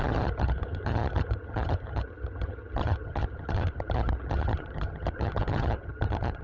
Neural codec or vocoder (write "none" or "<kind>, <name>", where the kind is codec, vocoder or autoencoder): vocoder, HiFi-GAN